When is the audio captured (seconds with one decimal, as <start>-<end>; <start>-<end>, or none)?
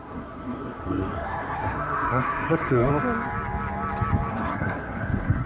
2.9-4.3